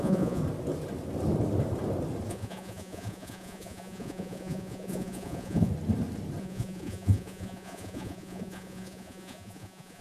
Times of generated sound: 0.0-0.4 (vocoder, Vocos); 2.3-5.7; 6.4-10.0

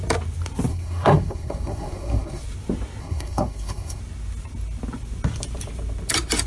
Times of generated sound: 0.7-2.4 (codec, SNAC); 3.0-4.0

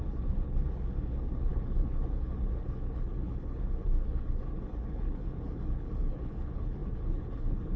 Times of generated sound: 0.0-7.8 (codec, HILCodec)